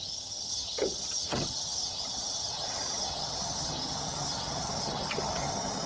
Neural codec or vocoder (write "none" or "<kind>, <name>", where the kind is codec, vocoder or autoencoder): vocoder, HiFi-GAN